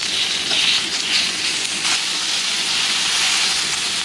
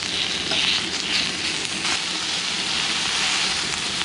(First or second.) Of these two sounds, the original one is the second